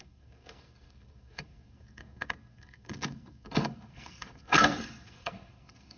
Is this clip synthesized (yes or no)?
yes